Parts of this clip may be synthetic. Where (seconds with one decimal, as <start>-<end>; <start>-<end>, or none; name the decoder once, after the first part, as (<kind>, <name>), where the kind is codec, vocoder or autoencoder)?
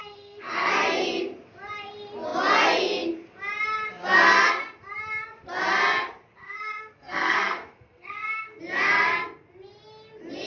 0.0-0.7 (codec, SNAC); 6.4-8.6